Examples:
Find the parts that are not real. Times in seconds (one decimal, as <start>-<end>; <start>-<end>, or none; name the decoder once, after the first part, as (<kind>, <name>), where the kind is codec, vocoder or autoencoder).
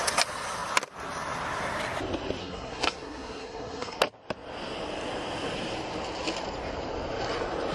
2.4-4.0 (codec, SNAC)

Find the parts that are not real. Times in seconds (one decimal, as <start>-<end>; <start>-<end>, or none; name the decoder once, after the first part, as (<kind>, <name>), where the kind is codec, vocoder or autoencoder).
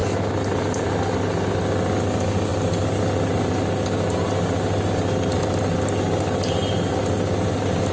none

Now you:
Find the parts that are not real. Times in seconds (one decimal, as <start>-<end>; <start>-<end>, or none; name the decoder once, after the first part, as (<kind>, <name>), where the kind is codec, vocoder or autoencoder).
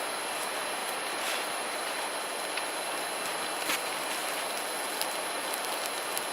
0.8-2.4 (vocoder, BigVGAN v2)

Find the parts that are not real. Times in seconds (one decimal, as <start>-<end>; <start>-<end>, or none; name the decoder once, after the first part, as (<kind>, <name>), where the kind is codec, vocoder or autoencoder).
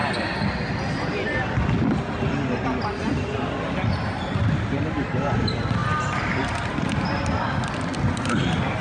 5.8-6.7 (vocoder, BigVGAN v2); 7.9-8.4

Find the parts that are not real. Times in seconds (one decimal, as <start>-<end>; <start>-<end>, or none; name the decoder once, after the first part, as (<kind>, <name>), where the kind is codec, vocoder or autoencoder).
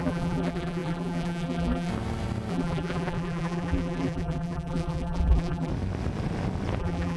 0.0-1.9 (vocoder, BigVGAN v2); 2.5-5.7; 6.8-7.2